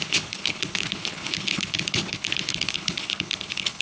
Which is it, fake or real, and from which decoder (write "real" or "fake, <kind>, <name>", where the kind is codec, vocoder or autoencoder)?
fake, codec, HILCodec